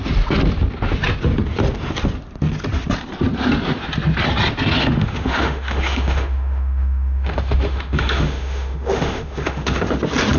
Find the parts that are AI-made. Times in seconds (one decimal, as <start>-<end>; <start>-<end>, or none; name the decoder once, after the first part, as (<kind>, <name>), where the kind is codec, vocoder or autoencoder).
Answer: 4.8-10.0 (autoencoder, DAC-VAE)